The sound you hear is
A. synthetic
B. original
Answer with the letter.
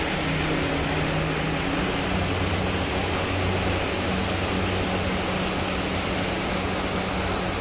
B